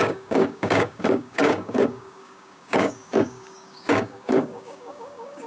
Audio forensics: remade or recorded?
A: remade